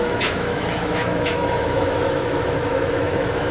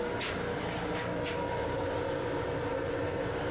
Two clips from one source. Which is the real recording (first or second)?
second